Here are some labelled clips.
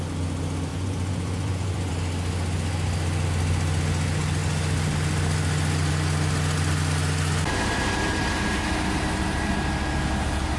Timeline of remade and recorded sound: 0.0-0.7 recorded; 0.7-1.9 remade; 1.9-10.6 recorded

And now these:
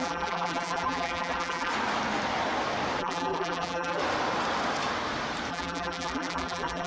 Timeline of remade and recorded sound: 0.0-1.7 remade; 1.7-3.0 recorded; 3.0-4.0 remade; 4.0-5.5 recorded; 5.5-6.9 remade

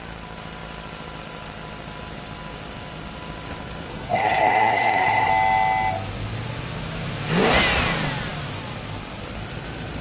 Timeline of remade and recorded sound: 0.0-3.9 recorded; 3.9-5.3 remade; 5.3-10.0 recorded